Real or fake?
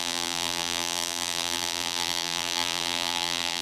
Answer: fake